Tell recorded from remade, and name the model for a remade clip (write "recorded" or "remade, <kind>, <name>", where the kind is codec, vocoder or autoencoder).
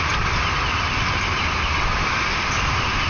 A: recorded